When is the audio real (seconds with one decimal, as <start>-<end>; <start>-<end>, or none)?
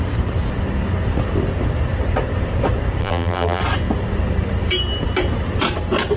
0.0-3.0; 3.6-6.2